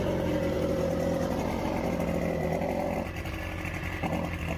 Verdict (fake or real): real